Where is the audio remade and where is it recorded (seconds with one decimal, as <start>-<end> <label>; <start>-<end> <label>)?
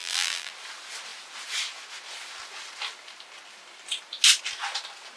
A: 0.0-0.5 remade; 0.5-5.2 recorded